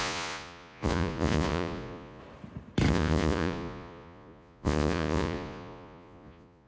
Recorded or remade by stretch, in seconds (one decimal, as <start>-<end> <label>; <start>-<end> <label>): 0.0-2.2 remade; 2.2-2.9 recorded; 2.9-6.7 remade